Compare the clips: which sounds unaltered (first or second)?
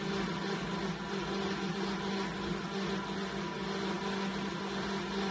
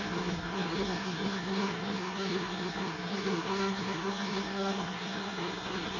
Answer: first